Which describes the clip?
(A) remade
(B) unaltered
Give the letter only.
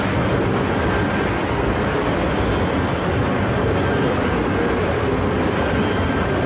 B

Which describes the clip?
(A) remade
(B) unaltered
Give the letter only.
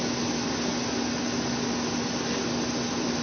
B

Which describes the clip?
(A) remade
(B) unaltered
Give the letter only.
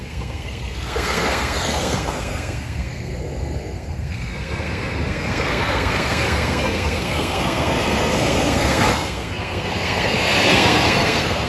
A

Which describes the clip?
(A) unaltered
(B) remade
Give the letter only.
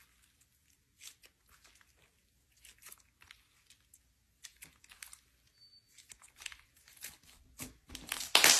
A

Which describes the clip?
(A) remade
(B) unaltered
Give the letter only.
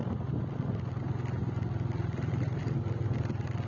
B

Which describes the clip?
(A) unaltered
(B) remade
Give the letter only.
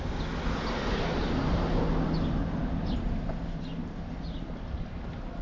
A